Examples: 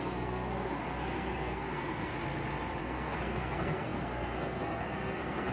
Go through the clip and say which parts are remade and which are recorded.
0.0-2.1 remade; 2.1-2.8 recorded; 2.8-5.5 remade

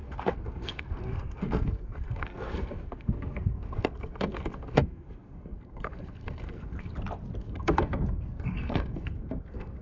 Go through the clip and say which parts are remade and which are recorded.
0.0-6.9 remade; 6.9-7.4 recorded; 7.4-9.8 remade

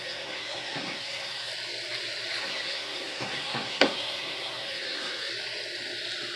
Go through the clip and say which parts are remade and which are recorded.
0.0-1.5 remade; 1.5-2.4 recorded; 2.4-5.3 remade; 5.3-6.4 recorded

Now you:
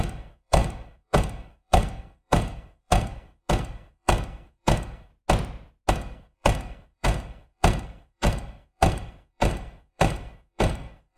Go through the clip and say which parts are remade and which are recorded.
0.0-5.1 remade; 5.1-5.9 recorded; 5.9-11.2 remade

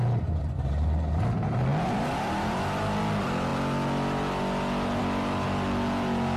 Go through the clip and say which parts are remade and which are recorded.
0.0-6.4 recorded